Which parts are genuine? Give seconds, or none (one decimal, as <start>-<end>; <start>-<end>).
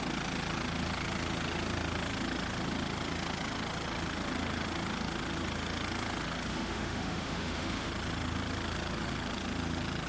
0.0-6.5; 7.9-10.1